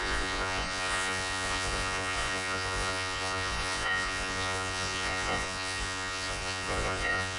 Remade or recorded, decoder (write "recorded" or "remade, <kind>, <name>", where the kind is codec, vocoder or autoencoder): remade, vocoder, Vocos